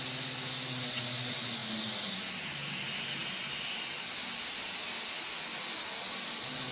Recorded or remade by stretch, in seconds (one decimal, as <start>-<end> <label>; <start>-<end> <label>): 0.0-6.7 recorded